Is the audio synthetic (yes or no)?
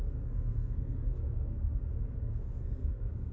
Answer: yes